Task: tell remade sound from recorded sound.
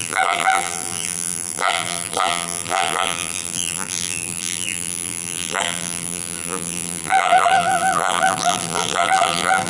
remade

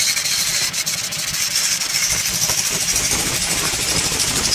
remade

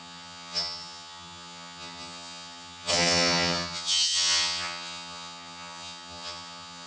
remade